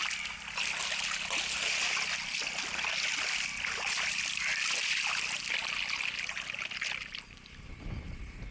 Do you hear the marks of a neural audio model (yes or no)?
no